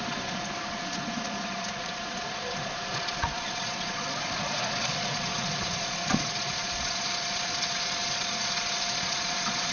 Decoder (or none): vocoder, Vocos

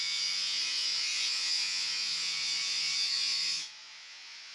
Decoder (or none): vocoder, Vocos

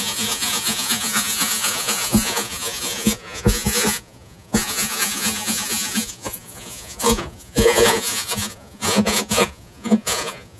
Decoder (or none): vocoder, Vocos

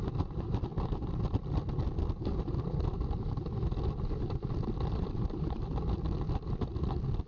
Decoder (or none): none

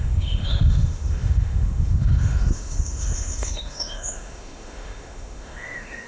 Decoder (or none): autoencoder, DAC-VAE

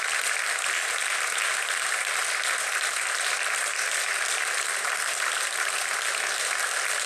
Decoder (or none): none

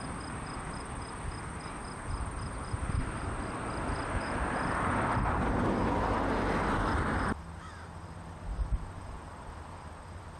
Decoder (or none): none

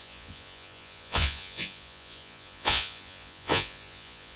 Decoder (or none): vocoder, Vocos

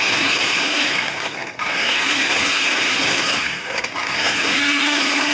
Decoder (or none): codec, SNAC